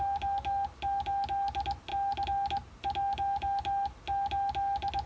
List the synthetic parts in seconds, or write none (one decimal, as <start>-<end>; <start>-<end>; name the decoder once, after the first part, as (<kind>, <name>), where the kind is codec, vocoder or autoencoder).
none